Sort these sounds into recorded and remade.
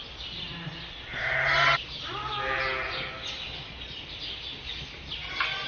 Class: recorded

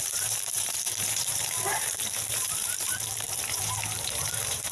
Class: remade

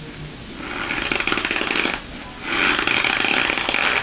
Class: recorded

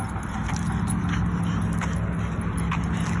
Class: recorded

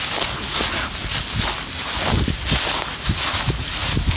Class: recorded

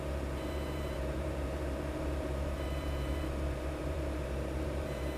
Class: remade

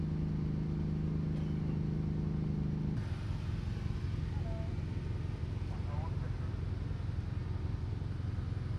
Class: recorded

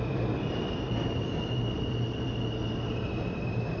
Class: remade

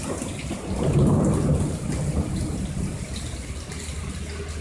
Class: recorded